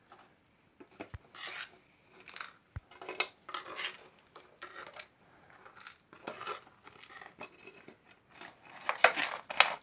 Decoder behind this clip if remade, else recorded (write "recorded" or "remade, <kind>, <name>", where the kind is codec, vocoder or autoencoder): recorded